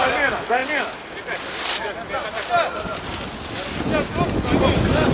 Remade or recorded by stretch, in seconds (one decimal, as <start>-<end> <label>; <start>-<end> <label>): 0.0-5.1 recorded